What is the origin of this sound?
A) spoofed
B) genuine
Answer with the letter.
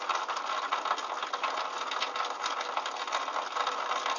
B